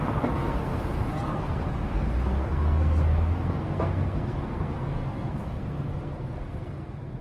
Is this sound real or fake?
fake